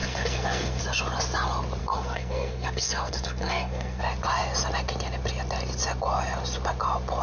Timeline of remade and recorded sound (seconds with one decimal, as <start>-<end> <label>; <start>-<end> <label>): 0.0-0.8 remade; 0.8-1.8 recorded; 1.8-4.0 remade; 4.0-7.2 recorded